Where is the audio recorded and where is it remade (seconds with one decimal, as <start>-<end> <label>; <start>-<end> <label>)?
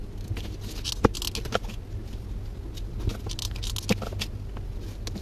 0.0-5.2 recorded